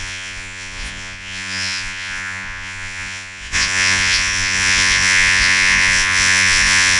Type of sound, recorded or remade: remade